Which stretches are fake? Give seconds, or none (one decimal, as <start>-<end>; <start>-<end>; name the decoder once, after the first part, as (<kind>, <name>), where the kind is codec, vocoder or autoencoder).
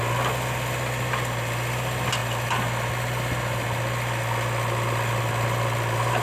none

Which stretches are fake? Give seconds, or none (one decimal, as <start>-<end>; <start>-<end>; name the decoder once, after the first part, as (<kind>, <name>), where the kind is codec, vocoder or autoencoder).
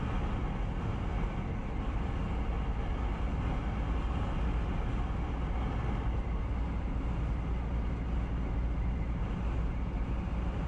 none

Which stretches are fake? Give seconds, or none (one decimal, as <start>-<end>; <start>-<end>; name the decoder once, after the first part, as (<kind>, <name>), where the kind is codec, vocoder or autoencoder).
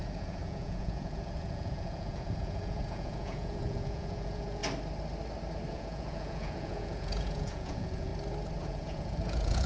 0.0-4.6 (vocoder, Vocos); 5.7-8.1; 8.6-9.7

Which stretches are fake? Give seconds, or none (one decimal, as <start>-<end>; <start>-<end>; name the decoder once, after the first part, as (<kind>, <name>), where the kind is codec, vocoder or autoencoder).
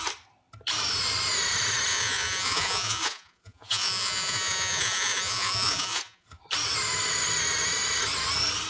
1.9-6.4 (vocoder, Vocos)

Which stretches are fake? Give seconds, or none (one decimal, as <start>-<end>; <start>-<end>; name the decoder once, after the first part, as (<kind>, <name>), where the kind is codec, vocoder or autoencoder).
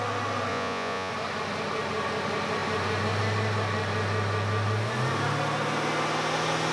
0.5-1.1 (vocoder, Vocos)